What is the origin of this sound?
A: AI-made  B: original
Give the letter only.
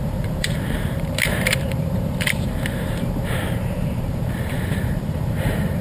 A